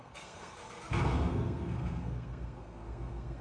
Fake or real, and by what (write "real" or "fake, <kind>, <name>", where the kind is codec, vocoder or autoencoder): fake, codec, SNAC